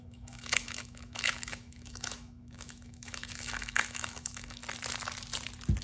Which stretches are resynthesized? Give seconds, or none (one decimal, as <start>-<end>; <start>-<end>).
0.0-4.6